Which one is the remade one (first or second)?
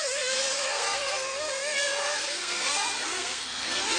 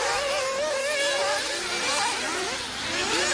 first